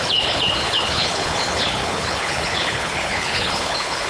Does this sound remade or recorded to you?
remade